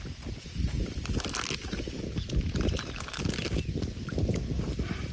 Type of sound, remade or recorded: recorded